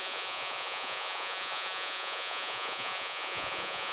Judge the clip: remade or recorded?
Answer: remade